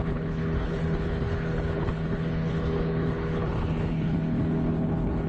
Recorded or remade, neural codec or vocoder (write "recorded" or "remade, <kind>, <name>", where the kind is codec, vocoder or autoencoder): remade, codec, HILCodec